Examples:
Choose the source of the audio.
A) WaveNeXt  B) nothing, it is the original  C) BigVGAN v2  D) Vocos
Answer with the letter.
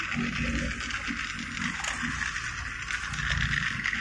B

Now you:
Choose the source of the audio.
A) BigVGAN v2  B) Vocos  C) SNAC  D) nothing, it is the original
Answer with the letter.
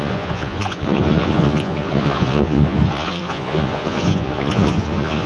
B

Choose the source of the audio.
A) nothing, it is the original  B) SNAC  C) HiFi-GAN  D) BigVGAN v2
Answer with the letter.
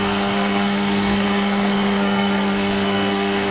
B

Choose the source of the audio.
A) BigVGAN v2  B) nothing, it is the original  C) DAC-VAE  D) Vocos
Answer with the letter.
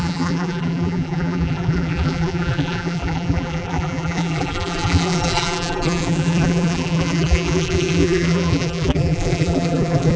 A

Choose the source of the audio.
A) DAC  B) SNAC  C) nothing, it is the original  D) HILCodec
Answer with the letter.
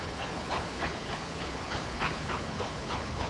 D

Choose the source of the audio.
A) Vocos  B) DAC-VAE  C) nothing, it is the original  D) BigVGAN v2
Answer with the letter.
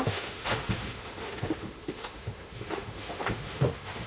B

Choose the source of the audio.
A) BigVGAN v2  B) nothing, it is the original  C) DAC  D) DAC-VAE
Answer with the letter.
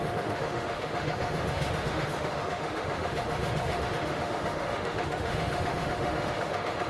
D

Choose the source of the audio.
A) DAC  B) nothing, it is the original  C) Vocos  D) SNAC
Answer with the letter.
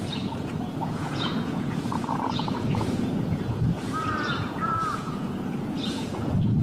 C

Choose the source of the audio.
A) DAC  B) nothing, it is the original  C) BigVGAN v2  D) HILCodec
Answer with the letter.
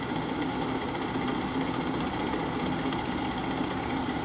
B